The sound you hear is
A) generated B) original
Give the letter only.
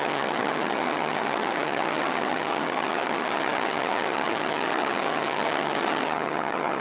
A